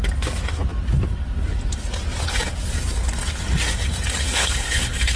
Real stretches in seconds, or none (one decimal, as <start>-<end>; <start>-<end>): 0.0-4.2